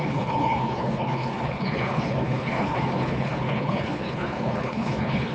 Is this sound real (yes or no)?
no